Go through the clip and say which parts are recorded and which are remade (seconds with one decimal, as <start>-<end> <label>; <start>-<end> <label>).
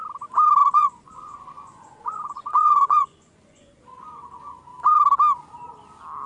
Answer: 0.0-0.6 recorded; 0.6-3.8 remade; 3.8-6.3 recorded